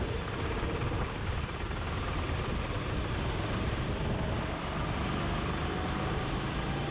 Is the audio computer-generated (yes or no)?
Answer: no